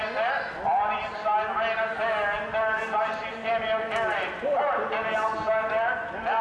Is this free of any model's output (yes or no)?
yes